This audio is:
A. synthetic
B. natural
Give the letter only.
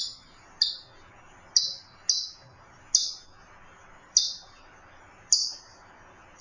B